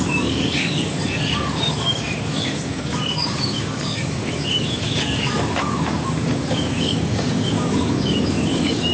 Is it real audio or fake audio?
fake